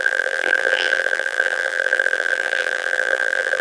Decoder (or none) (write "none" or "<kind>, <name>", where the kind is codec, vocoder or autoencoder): vocoder, BigVGAN v2